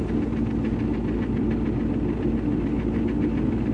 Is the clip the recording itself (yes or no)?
yes